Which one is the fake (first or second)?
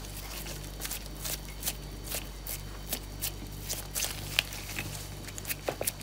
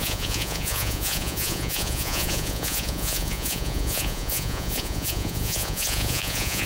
second